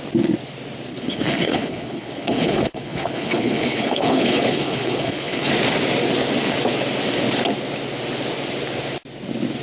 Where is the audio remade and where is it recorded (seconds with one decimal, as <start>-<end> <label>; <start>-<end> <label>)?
0.0-0.9 recorded; 0.9-5.5 remade; 5.5-9.6 recorded